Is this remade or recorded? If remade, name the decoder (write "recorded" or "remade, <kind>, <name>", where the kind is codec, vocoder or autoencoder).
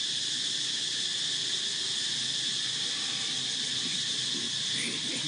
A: recorded